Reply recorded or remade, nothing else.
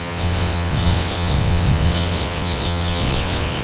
remade